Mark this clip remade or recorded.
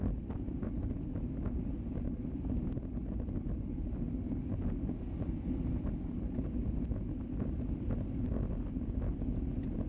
recorded